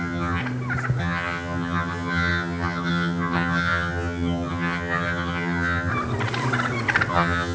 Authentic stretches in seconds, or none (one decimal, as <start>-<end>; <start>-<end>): 0.4-1.0; 5.9-7.1